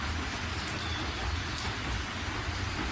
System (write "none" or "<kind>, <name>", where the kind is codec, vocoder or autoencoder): none